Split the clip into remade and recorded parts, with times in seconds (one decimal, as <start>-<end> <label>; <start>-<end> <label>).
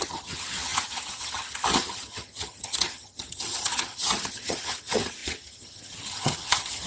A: 0.0-6.9 remade